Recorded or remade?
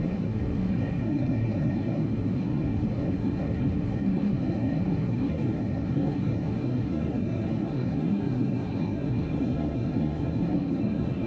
remade